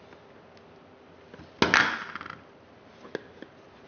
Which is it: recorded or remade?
recorded